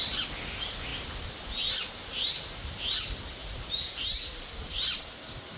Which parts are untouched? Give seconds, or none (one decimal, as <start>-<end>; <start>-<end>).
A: 0.0-3.4; 5.1-5.6